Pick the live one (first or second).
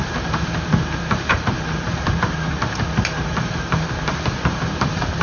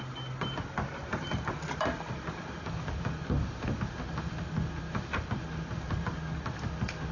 second